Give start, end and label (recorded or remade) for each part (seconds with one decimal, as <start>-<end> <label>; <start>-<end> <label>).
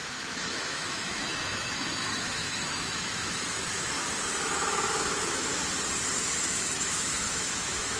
0.0-5.5 remade; 5.5-6.3 recorded; 6.3-8.0 remade